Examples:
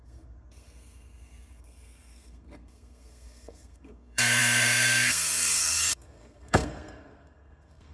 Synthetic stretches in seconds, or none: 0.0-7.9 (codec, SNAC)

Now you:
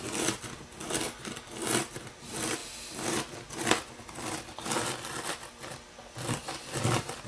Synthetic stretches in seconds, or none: none

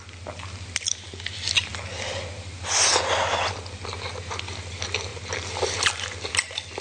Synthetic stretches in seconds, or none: none

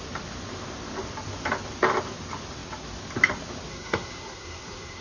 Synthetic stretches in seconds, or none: 3.7-5.0 (codec, SNAC)

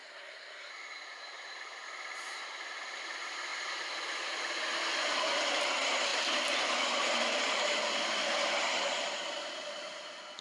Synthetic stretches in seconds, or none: 0.0-0.7 (codec, SNAC)

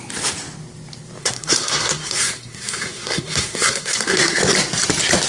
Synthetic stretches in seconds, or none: 1.2-4.4 (codec, SNAC)

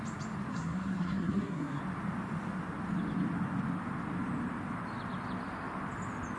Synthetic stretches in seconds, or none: 0.5-1.8 (codec, SNAC)

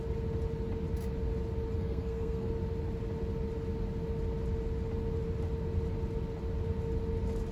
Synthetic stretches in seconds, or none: 1.8-2.5 (codec, SNAC)